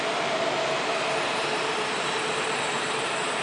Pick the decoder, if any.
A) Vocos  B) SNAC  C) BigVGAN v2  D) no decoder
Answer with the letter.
C